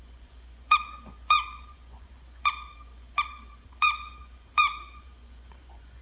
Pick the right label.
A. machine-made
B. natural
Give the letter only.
A